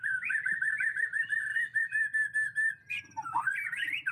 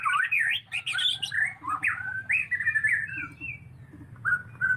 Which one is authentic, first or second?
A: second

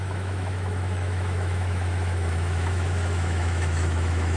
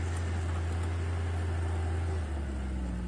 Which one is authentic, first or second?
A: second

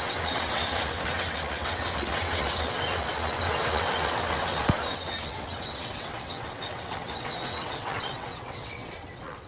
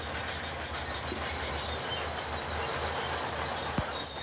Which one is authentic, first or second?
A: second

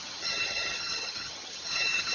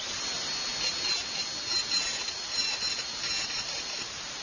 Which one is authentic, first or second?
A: second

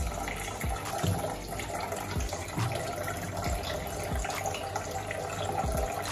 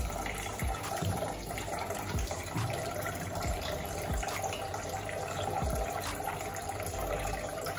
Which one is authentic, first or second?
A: first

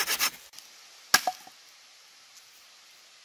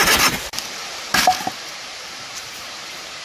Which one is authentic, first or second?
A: first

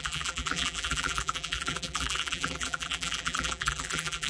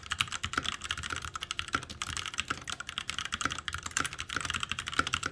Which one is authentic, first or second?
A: second